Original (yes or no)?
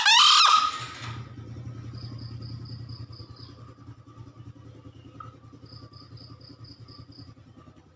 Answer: yes